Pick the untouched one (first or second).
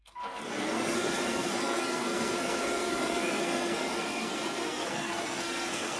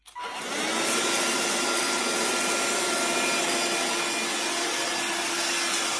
second